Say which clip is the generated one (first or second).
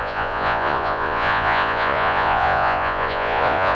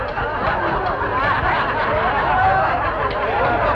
first